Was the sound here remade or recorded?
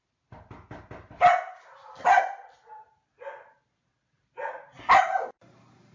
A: recorded